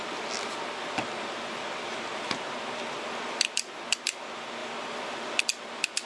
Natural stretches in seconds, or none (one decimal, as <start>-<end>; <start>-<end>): 0.0-6.1